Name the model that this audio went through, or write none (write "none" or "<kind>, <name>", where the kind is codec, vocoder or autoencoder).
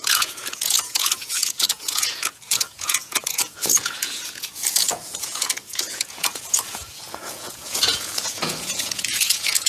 vocoder, Vocos